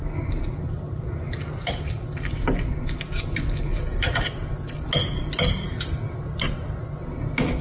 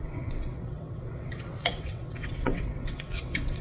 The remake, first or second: second